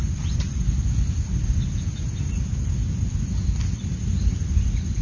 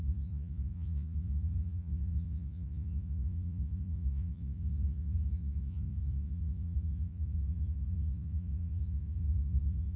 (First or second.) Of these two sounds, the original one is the first